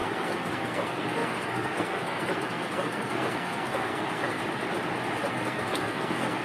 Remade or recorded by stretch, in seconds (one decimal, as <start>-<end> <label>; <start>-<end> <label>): 0.0-4.4 remade; 4.4-5.3 recorded; 5.3-6.4 remade